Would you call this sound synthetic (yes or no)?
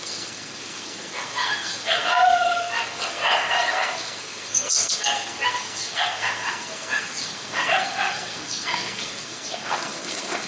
yes